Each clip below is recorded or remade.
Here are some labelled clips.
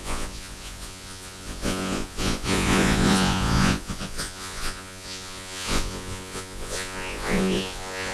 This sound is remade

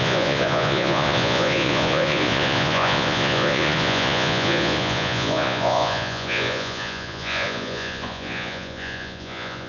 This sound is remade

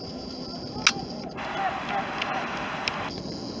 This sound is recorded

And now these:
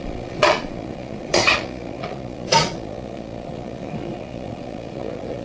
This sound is remade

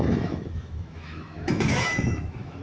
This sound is remade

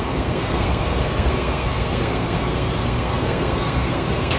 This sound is remade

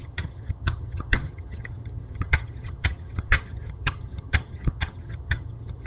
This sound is remade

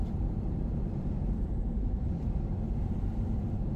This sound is remade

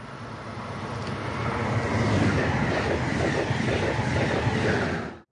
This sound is recorded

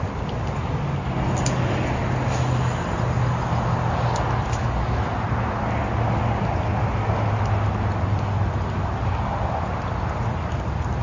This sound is recorded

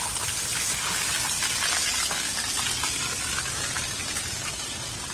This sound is recorded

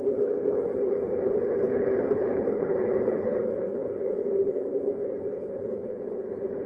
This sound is remade